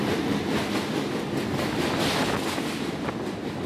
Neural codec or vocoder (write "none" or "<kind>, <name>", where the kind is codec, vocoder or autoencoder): none